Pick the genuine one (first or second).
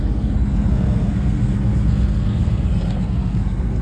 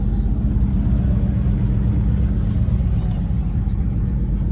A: second